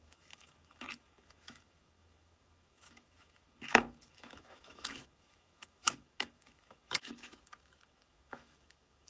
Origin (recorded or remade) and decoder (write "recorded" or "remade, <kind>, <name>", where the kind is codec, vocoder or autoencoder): remade, autoencoder, DAC-VAE